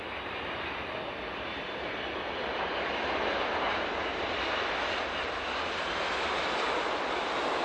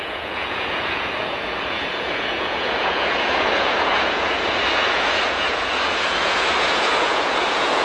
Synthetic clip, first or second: second